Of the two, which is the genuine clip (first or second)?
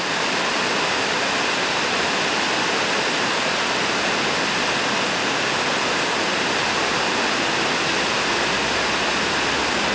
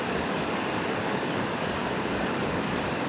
first